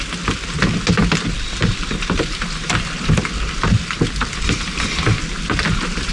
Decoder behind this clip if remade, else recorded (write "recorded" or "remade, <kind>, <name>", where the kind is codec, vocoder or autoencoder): recorded